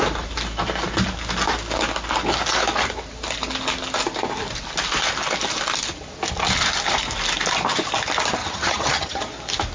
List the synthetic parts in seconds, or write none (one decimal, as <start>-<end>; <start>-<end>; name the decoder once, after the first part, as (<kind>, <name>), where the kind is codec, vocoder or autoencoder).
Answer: 8.4-9.2 (vocoder, HiFi-GAN)